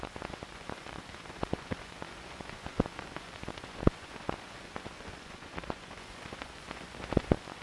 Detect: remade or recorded remade